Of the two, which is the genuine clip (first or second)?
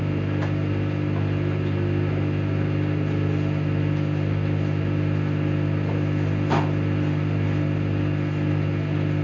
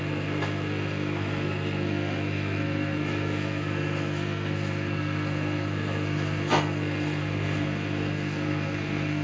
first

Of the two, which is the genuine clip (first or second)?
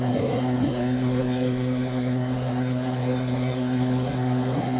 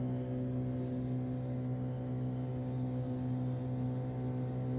second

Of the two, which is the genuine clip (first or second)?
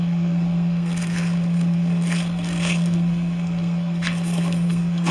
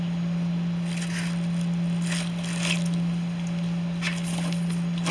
second